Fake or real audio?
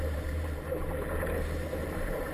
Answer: fake